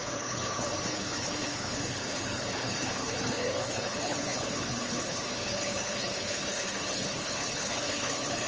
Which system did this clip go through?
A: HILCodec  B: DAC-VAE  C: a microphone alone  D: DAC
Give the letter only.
A